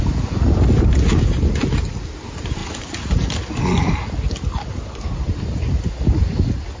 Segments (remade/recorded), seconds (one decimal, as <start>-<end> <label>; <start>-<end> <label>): 0.0-6.8 recorded